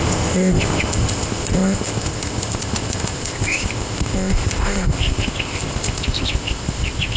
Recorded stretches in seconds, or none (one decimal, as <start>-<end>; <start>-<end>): none